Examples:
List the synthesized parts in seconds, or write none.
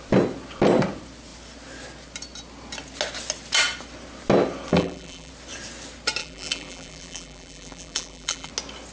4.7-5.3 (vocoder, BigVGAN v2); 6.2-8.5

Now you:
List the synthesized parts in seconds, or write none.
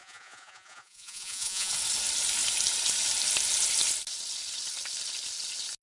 0.0-1.7 (vocoder, Vocos)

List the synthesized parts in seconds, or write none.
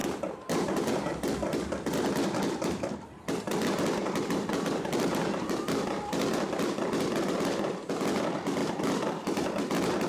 0.0-0.7 (vocoder, BigVGAN v2); 4.0-6.2; 8.6-9.6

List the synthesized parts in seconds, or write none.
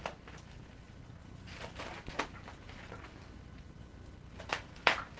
1.2-1.8 (vocoder, BigVGAN v2)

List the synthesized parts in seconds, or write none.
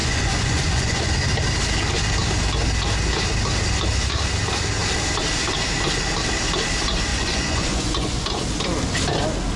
0.0-1.1 (vocoder, Vocos); 7.1-8.4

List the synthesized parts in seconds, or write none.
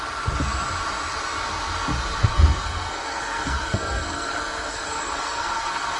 2.2-6.0 (codec, SNAC)